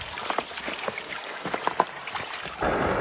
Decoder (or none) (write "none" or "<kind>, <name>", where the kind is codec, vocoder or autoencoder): none